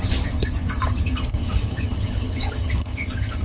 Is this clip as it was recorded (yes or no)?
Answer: no